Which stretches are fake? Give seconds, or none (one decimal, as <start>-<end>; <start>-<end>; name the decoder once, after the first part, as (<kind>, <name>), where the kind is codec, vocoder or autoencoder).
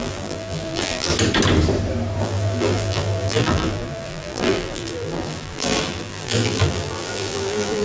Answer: 0.0-1.1 (vocoder, BigVGAN v2); 2.2-7.8